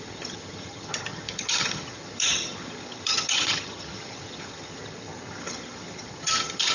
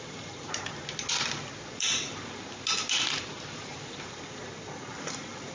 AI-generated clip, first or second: first